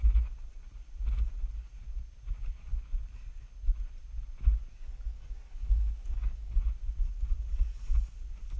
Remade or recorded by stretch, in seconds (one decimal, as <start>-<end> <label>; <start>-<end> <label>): 0.0-4.7 recorded; 4.7-6.6 remade; 6.6-8.6 recorded